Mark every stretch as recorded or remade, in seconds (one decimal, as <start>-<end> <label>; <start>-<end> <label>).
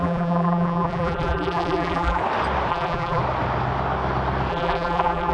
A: 0.0-2.2 remade; 2.2-2.7 recorded; 2.7-3.2 remade; 3.2-4.5 recorded; 4.5-5.3 remade